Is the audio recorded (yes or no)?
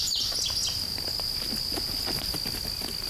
yes